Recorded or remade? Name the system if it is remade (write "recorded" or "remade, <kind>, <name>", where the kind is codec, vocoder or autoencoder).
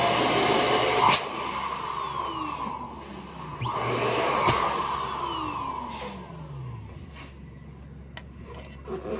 recorded